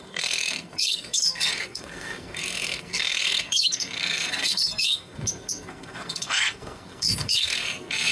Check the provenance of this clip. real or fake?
fake